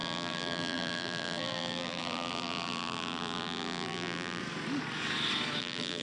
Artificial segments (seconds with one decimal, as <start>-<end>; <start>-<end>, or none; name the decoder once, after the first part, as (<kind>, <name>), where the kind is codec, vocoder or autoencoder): 0.0-4.4 (vocoder, BigVGAN v2); 5.6-6.0